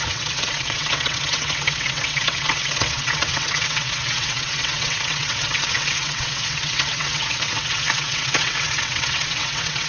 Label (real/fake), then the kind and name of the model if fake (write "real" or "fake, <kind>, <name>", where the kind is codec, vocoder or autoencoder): fake, vocoder, WaveNeXt